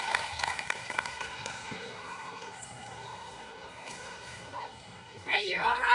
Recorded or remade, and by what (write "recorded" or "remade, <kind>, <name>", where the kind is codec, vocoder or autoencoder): remade, codec, SNAC